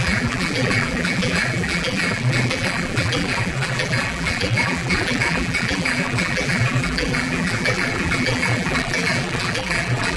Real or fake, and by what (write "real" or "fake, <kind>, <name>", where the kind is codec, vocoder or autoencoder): fake, vocoder, BigVGAN v2